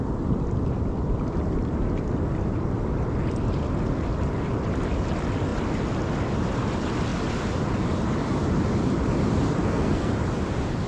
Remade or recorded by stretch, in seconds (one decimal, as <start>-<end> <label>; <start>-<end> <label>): 0.0-9.6 recorded; 9.6-10.1 remade; 10.1-10.9 recorded